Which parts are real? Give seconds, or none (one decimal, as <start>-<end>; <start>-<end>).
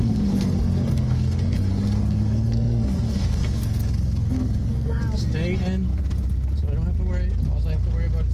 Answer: 5.0-8.3